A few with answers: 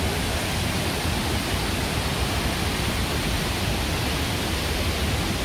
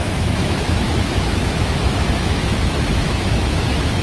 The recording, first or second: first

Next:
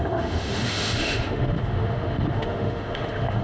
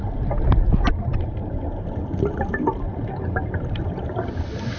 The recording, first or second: second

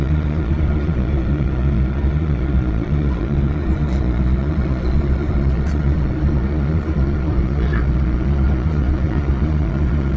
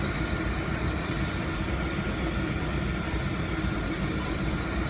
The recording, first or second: second